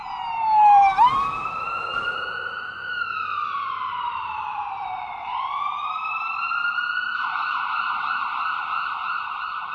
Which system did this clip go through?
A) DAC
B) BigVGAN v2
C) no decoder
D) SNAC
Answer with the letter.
B